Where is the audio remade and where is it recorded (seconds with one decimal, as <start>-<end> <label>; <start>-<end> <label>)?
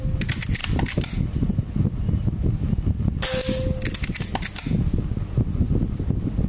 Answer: 0.0-6.5 recorded